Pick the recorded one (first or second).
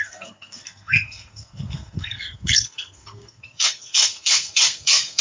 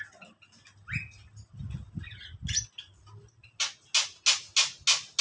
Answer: second